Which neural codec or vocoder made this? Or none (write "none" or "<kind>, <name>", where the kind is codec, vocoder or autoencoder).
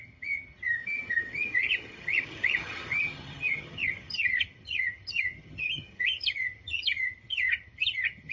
vocoder, HiFi-GAN